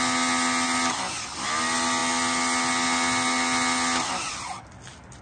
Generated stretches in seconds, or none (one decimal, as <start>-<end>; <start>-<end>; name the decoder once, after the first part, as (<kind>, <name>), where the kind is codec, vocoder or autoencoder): none

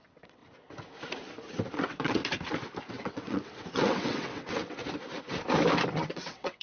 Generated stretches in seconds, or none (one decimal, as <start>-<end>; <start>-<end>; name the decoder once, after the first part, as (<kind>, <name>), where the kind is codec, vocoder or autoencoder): 0.0-0.4 (vocoder, WaveNeXt); 1.8-2.2; 2.9-4.8; 5.9-6.6

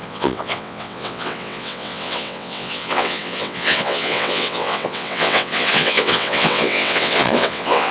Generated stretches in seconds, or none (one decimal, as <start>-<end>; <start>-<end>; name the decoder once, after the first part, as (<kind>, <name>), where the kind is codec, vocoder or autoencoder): 0.0-7.9 (vocoder, WaveNeXt)

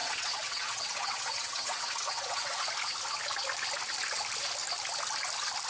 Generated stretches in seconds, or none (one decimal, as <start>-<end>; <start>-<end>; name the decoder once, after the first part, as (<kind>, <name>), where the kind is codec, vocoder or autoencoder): 0.0-2.6 (vocoder, WaveNeXt)

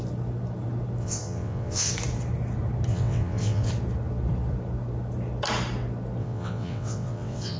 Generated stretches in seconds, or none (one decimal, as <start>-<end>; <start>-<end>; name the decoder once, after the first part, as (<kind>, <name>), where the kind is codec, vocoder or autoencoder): 1.0-1.9 (vocoder, WaveNeXt); 2.9-3.7; 6.2-7.6

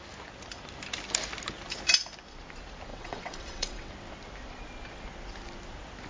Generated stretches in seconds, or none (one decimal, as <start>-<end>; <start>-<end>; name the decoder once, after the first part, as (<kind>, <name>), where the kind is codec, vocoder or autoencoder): 2.9-3.9 (vocoder, WaveNeXt)

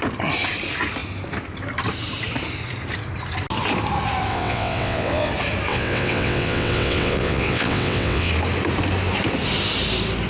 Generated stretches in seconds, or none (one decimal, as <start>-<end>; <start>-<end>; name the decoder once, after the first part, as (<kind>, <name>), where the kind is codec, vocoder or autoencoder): 4.3-5.3 (vocoder, WaveNeXt); 5.7-8.3